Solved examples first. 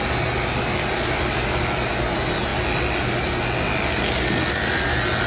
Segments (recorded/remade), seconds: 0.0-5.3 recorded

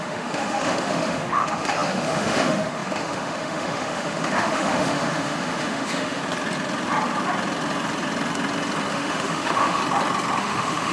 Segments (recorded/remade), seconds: 0.0-6.2 remade; 6.2-8.9 recorded; 8.9-9.8 remade; 9.8-10.4 recorded; 10.4-10.9 remade

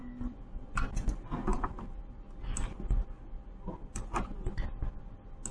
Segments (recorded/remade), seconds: 0.0-1.5 recorded; 1.5-4.8 remade; 4.8-5.5 recorded